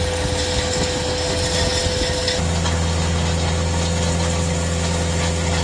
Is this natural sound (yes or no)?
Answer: yes